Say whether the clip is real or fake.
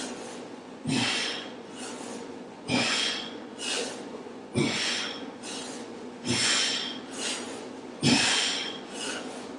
fake